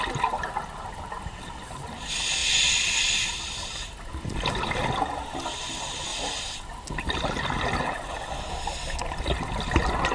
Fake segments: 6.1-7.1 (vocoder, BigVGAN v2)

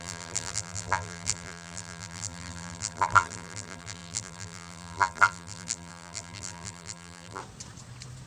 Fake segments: 0.0-7.4 (vocoder, BigVGAN v2)

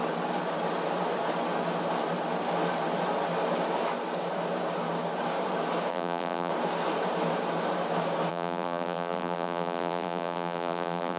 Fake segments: 5.9-6.5 (vocoder, BigVGAN v2); 8.3-11.2